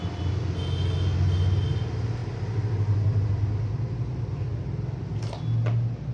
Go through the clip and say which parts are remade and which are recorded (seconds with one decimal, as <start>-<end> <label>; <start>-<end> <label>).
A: 0.0-6.1 recorded